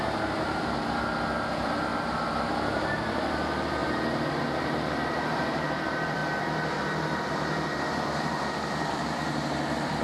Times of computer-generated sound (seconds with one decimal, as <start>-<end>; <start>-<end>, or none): 0.0-1.9; 2.5-6.2; 8.9-10.0